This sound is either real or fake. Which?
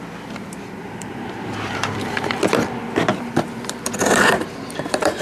fake